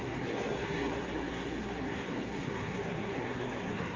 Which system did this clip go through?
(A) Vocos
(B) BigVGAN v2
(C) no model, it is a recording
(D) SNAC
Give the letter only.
D